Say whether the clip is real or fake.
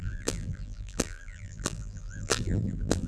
fake